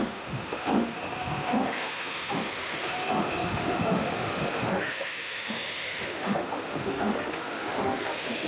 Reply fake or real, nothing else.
fake